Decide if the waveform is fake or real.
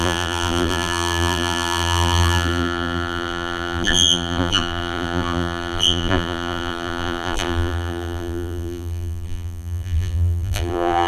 fake